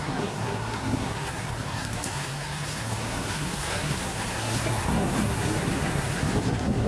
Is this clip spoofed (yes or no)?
yes